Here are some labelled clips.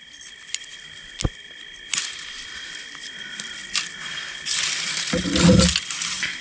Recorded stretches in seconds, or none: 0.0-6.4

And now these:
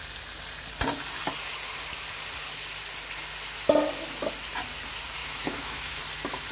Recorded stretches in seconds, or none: 0.0-5.2; 6.0-6.5